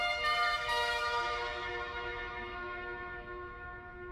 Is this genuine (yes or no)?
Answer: no